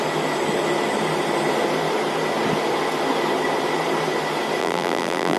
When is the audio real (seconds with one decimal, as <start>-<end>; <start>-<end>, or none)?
0.0-4.6